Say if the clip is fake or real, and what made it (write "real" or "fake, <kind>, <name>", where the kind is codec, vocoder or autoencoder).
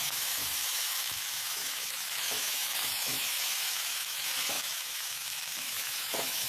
fake, autoencoder, DAC-VAE